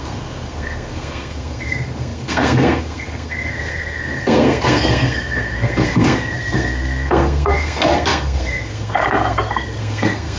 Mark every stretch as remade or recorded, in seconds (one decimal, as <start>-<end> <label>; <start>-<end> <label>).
0.0-10.4 remade